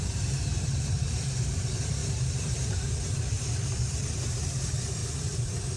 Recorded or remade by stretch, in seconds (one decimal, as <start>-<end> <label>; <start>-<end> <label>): 0.0-5.8 remade